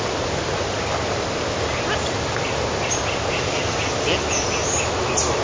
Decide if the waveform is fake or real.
real